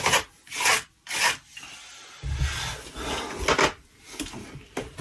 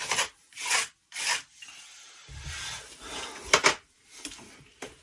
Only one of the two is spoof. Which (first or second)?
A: second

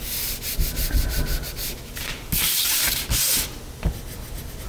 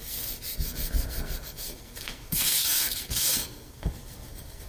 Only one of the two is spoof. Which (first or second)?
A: second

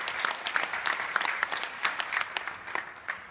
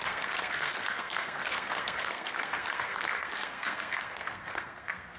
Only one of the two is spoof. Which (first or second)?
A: second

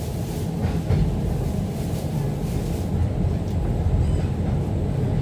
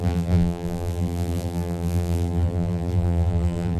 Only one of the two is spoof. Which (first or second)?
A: second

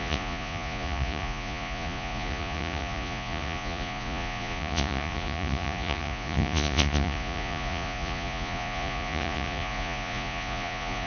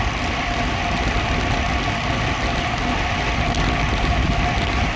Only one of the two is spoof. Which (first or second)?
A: first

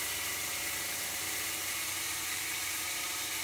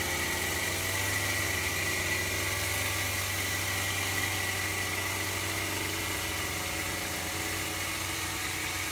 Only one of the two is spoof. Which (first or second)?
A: first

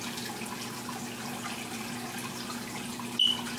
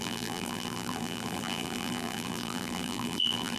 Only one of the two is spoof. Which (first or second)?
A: second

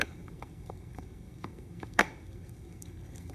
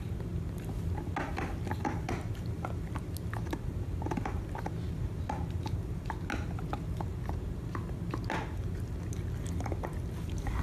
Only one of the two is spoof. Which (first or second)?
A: first